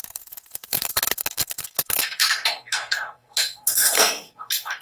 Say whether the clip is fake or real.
fake